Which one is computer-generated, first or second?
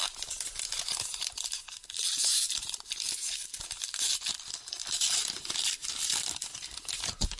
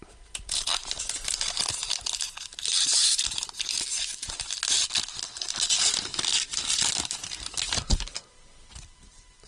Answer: first